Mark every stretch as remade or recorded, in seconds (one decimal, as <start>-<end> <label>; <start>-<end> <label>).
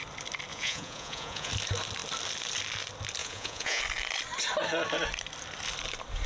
0.0-0.5 recorded; 0.5-1.5 remade; 1.5-3.2 recorded; 3.2-3.8 remade; 3.8-6.3 recorded